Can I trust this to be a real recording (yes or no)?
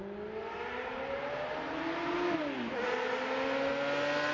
yes